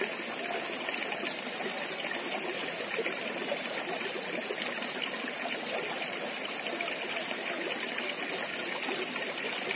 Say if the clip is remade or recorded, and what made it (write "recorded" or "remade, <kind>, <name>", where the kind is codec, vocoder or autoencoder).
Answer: recorded